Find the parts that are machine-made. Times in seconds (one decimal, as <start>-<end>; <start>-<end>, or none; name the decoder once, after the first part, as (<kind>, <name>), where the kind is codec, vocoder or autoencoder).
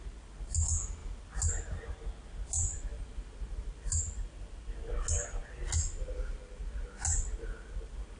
none